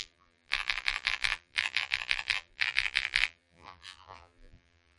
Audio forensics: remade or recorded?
remade